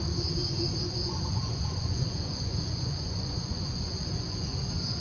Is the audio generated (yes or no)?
yes